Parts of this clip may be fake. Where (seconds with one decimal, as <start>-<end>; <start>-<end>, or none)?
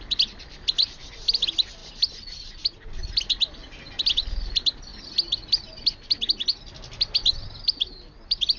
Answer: none